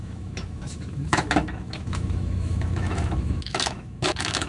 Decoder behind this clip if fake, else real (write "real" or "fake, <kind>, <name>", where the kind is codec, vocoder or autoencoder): fake, autoencoder, DAC-VAE